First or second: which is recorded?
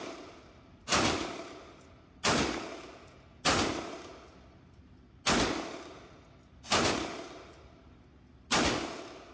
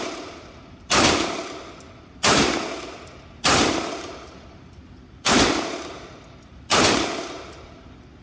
first